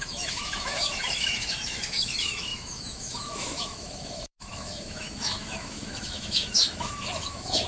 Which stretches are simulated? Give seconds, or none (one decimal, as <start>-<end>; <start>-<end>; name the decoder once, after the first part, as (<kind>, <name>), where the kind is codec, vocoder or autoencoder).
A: 0.0-7.7 (autoencoder, DAC-VAE)